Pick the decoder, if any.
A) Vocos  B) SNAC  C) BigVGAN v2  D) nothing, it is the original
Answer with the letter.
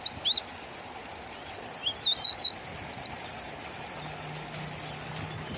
D